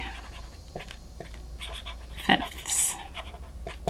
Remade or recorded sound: recorded